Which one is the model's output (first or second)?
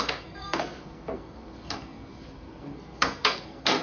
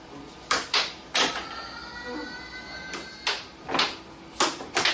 first